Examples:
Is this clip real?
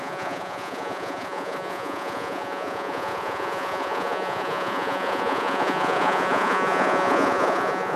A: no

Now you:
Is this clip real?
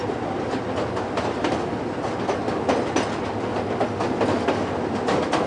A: yes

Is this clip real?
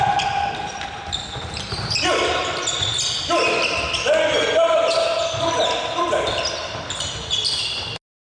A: yes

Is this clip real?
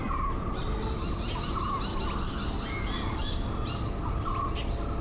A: yes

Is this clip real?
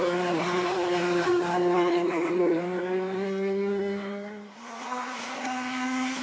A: no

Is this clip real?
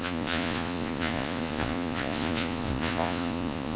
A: no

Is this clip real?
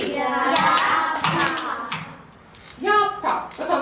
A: yes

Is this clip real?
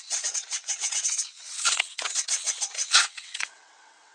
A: no